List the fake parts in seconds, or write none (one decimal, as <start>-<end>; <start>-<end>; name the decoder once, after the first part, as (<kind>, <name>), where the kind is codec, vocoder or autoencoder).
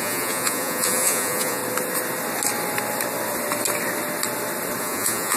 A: 0.0-1.6 (vocoder, Vocos); 4.8-5.4